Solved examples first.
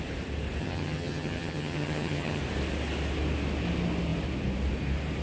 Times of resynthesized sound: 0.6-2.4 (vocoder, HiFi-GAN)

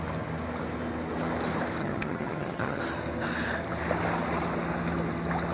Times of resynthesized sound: 1.8-2.8 (vocoder, HiFi-GAN)

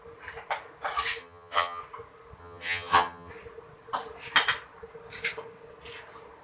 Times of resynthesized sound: 1.2-1.8 (vocoder, HiFi-GAN); 2.4-3.3

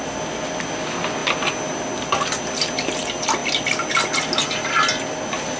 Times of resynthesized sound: none

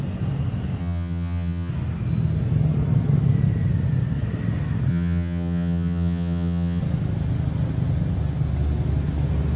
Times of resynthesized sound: 0.8-1.7 (vocoder, HiFi-GAN); 4.9-6.8

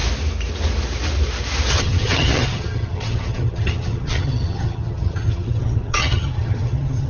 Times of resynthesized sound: 1.7-7.1 (vocoder, HiFi-GAN)

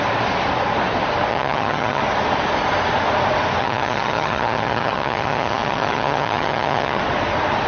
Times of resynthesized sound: 1.3-2.0 (vocoder, HiFi-GAN); 3.6-7.0

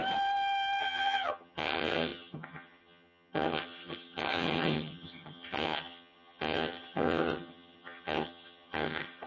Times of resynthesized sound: 0.8-9.3 (vocoder, HiFi-GAN)